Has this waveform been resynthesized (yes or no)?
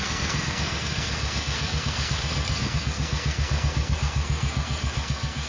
yes